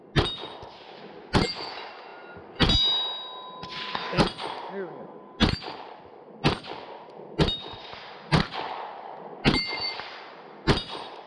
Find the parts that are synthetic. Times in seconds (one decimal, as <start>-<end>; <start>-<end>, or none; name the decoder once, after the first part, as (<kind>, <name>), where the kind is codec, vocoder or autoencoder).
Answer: none